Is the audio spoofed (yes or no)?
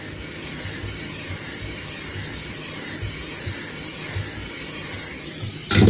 no